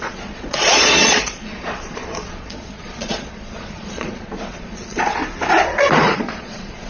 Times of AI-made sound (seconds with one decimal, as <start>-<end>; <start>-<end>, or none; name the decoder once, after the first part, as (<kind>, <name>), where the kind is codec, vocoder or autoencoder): 0.0-5.2 (vocoder, Vocos); 6.0-6.9